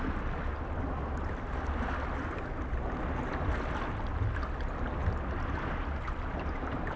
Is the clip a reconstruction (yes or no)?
no